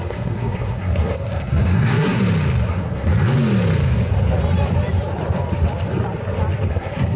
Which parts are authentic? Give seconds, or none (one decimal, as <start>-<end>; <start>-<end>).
2.2-2.7; 3.1-6.7